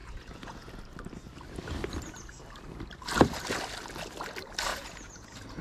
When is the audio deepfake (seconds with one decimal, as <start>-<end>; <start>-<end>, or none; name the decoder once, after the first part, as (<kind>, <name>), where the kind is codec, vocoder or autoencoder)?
0.0-0.8 (vocoder, Vocos); 4.7-5.6